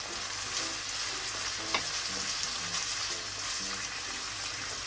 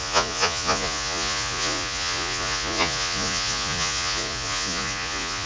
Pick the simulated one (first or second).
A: second